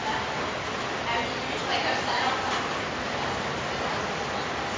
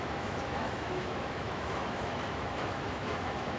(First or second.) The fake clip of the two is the second